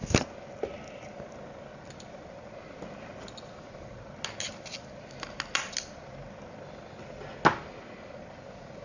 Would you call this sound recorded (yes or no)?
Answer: yes